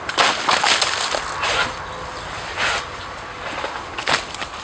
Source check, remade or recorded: recorded